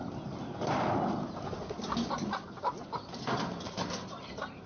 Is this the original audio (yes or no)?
yes